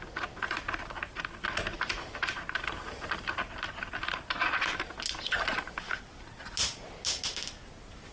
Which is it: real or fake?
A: real